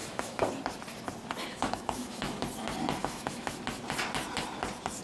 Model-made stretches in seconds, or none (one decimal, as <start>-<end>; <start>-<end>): 0.0-0.5; 1.5-2.4; 3.0-3.6